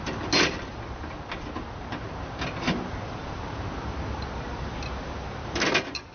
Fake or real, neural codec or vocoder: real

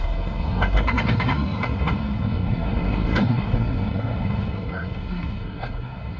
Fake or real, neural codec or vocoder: fake, codec, SNAC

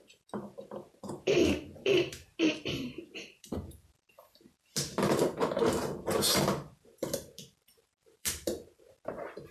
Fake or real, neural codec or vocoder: fake, vocoder, BigVGAN v2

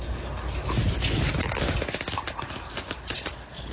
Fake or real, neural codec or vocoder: real